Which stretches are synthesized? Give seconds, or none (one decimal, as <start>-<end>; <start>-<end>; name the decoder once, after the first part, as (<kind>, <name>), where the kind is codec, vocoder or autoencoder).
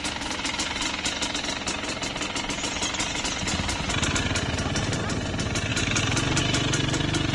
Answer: none